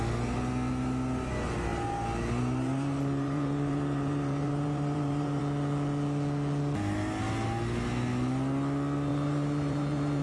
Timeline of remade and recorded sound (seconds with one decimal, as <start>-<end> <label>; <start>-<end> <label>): 0.0-1.7 recorded; 1.7-5.4 remade; 5.4-9.1 recorded; 9.1-10.2 remade